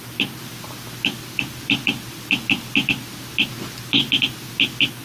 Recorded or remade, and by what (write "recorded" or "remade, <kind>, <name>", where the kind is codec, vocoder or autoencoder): recorded